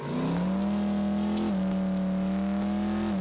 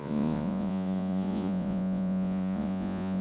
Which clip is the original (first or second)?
first